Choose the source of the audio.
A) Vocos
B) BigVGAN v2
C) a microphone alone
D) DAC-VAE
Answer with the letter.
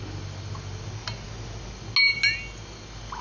C